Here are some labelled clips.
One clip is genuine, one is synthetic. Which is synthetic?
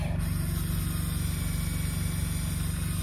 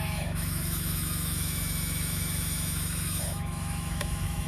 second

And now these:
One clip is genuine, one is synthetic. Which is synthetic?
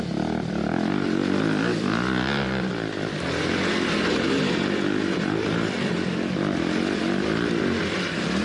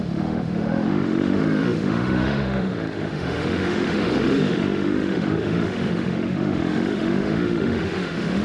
second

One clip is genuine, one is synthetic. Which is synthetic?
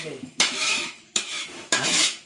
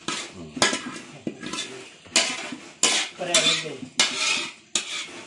first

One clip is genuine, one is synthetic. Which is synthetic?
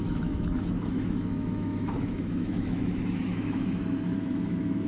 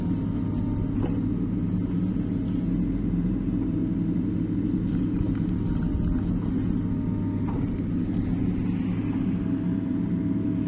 first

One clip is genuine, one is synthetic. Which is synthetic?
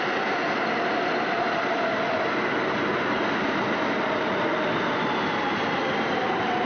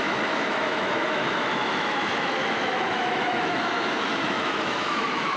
second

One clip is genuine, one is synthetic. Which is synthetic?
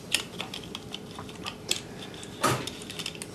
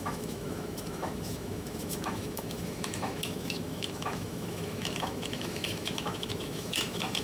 second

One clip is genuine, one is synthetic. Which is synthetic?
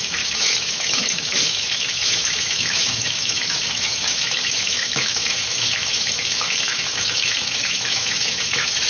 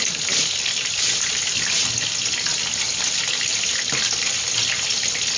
first